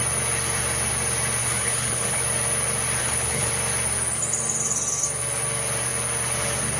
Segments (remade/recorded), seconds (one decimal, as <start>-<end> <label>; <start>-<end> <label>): 0.0-1.4 recorded; 1.4-2.2 remade; 2.2-3.0 recorded; 3.0-3.5 remade; 3.5-6.8 recorded